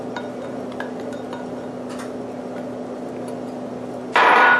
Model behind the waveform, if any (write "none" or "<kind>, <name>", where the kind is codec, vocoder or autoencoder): none